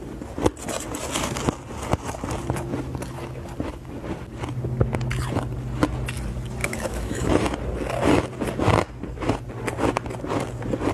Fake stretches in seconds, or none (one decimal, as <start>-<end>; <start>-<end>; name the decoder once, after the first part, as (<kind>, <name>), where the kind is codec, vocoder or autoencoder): 6.6-7.3 (autoencoder, DAC-VAE)